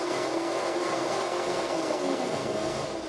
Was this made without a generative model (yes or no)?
no